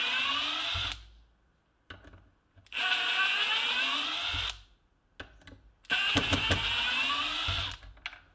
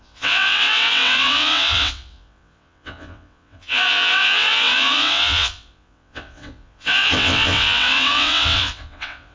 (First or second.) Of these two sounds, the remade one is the second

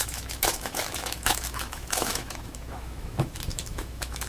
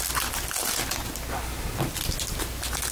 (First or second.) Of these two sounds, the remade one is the first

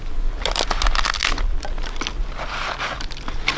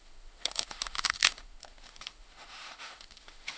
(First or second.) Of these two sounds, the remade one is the second